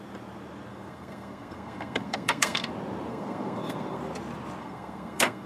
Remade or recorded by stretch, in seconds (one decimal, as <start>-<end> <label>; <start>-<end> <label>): 0.0-0.7 recorded; 0.7-2.7 remade; 2.7-3.1 recorded; 3.1-4.0 remade; 4.0-4.6 recorded; 4.6-5.5 remade